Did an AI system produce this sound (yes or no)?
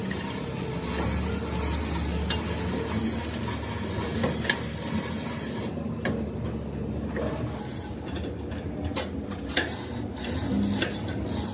no